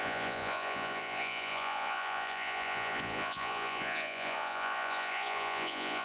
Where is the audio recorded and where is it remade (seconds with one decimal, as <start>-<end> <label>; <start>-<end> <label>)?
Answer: 0.0-6.0 remade